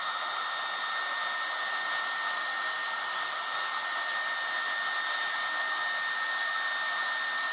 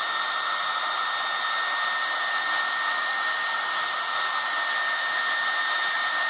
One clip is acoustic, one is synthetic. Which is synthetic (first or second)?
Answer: second